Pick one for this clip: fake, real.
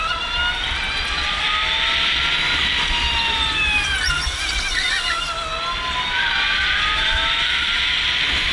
real